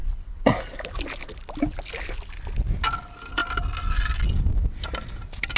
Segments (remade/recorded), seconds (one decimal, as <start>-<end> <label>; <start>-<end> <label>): 0.0-5.6 recorded